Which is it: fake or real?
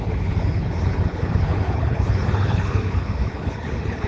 fake